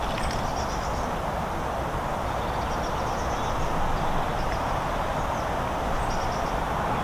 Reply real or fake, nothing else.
real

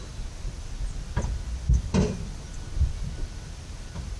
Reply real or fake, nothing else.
real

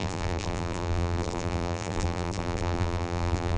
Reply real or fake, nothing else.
fake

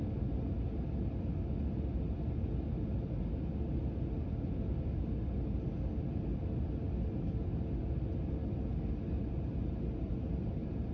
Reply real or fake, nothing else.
real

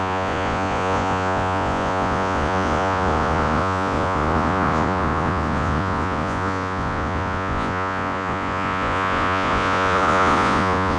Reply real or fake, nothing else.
fake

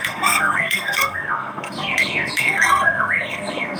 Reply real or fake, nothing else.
fake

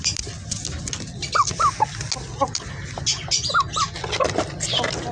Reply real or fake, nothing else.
real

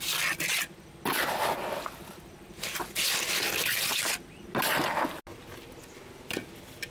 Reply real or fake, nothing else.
real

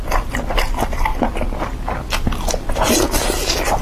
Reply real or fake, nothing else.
real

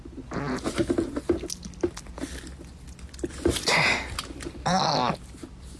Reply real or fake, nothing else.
real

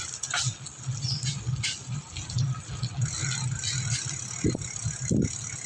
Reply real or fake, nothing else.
real